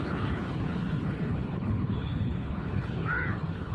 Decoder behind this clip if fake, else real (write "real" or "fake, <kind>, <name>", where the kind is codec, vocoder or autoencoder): fake, codec, HILCodec